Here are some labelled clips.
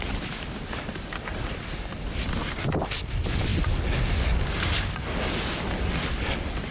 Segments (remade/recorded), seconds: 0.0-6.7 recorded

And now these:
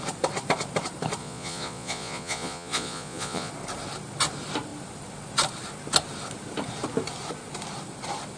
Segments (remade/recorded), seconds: 0.0-1.2 recorded; 1.2-3.5 remade; 3.5-8.4 recorded

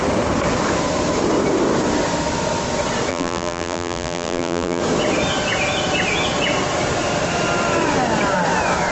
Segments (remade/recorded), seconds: 0.0-3.1 recorded; 3.1-4.8 remade; 4.8-8.9 recorded

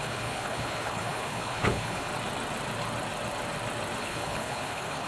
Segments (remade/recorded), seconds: 0.0-2.1 remade; 2.1-4.0 recorded; 4.0-5.1 remade

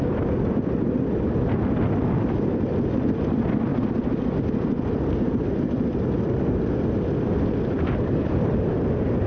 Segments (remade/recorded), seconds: 0.0-3.7 remade; 3.7-6.8 recorded; 6.8-9.3 remade

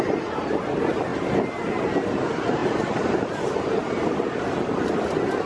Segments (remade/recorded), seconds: 0.0-5.5 recorded

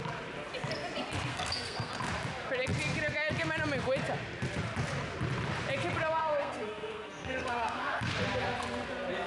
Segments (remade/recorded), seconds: 0.0-1.3 recorded; 1.3-1.9 remade; 1.9-6.2 recorded; 6.2-8.1 remade; 8.1-9.3 recorded

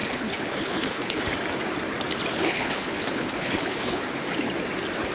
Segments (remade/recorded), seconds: 0.0-1.2 remade; 1.2-2.4 recorded; 2.4-4.0 remade; 4.0-5.1 recorded